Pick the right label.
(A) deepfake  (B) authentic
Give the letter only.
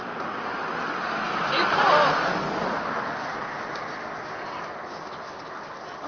B